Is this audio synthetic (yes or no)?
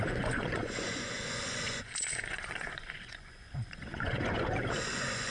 yes